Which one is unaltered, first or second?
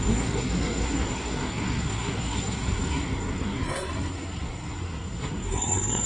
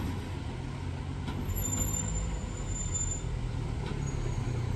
second